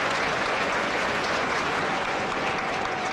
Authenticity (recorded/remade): remade